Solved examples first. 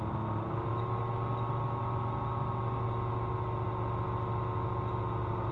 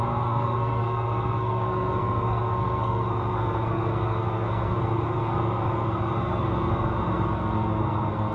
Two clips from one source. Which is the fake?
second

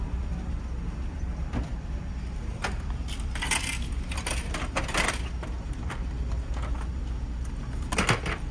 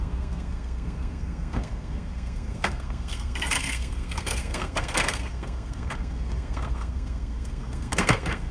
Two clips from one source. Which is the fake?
second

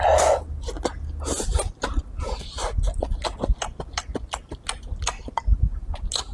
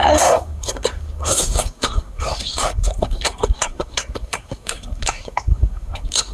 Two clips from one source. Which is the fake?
second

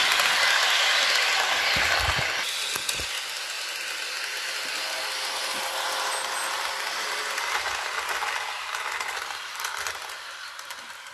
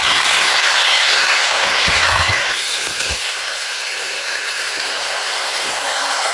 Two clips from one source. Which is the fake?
second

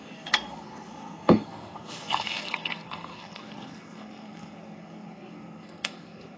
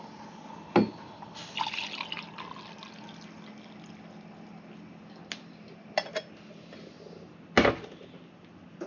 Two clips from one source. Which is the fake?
first